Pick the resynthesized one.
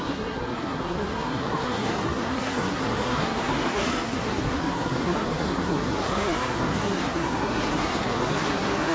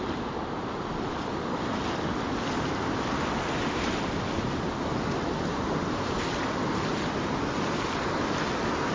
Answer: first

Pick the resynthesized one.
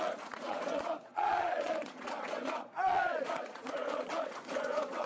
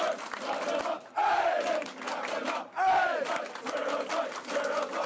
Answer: first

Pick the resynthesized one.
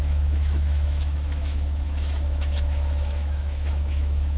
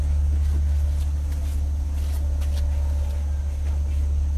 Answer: first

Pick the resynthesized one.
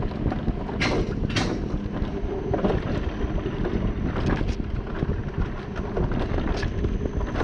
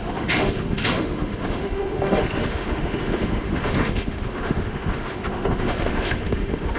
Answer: second